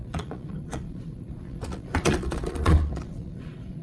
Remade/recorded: remade